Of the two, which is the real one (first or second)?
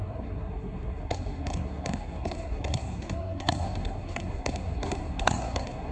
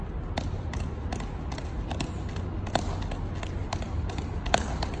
second